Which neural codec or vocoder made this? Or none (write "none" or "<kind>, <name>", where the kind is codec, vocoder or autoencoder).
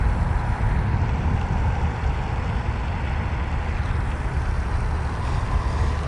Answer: none